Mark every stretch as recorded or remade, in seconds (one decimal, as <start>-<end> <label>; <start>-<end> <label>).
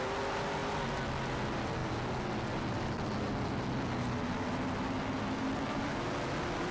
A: 0.0-6.7 recorded